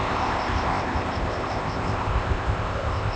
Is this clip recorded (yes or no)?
no